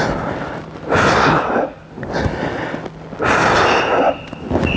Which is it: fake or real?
real